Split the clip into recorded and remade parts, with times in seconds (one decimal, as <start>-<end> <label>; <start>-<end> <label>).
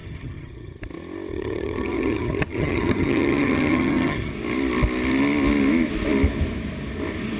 0.0-0.8 remade; 0.8-1.3 recorded; 1.3-4.3 remade; 4.3-7.4 recorded